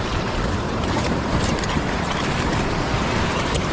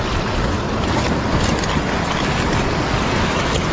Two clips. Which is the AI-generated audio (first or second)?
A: first